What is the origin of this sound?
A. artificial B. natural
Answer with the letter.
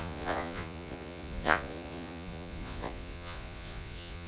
A